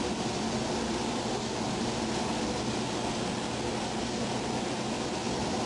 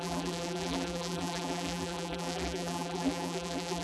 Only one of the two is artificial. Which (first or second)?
second